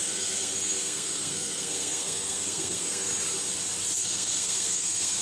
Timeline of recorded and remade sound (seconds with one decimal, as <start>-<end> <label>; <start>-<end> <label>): 0.0-3.1 remade; 3.1-4.0 recorded; 4.0-5.2 remade